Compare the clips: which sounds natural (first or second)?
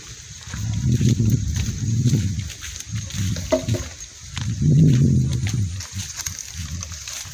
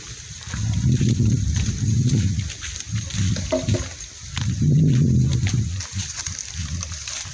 first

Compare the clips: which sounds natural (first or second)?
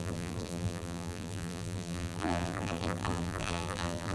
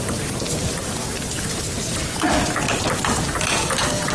second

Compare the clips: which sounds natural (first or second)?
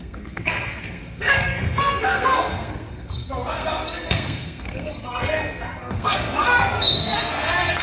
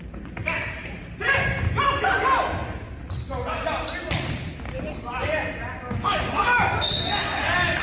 second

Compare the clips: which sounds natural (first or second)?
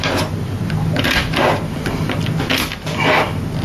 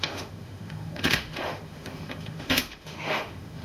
first